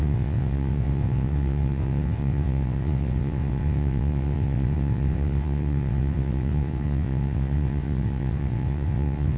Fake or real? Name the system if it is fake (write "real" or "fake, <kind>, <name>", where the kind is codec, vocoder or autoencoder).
fake, vocoder, WaveNeXt